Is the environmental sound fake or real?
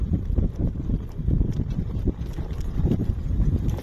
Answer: fake